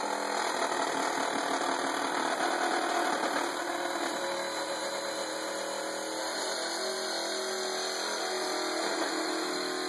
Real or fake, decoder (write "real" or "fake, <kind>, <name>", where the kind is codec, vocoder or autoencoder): real